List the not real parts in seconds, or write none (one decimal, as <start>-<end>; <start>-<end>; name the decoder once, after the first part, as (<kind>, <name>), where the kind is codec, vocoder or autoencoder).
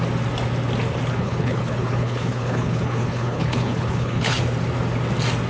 1.1-4.4 (codec, HILCodec)